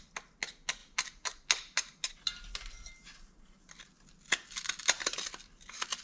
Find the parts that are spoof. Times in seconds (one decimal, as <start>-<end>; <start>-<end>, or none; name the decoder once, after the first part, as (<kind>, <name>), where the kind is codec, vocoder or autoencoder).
none